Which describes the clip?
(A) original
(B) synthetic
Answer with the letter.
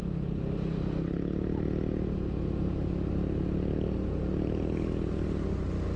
A